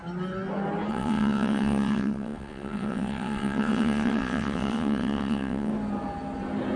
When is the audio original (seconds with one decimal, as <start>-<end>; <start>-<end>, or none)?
0.0-0.9; 5.7-6.8